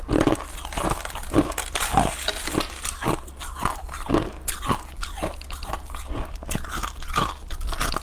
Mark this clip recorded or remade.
recorded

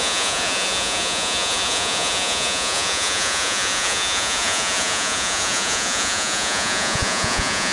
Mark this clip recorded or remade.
remade